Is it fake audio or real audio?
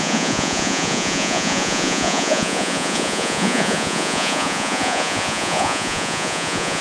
fake